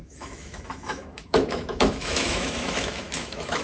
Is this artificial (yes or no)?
yes